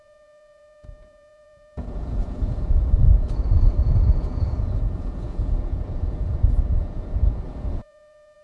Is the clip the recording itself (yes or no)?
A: no